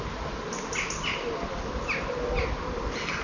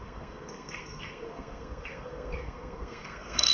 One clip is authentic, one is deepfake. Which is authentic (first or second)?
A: first